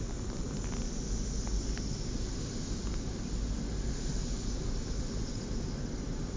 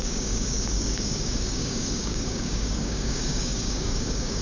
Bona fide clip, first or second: first